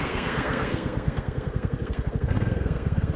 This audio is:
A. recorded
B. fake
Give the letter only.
B